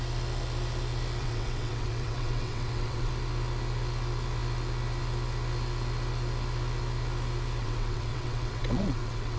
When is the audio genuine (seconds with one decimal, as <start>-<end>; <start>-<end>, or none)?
0.0-1.2; 3.1-7.6